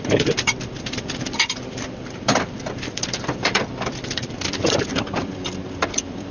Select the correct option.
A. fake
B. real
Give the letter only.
A